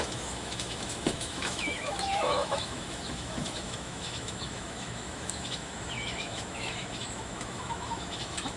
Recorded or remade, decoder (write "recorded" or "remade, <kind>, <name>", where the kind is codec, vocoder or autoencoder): remade, autoencoder, DAC-VAE